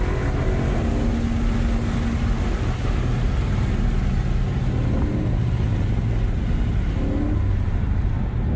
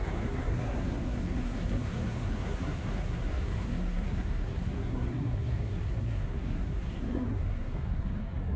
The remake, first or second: second